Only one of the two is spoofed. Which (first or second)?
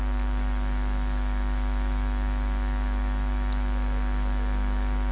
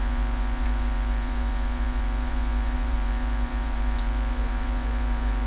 second